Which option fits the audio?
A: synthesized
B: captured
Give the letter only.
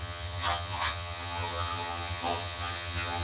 A